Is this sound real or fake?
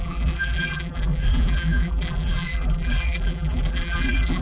fake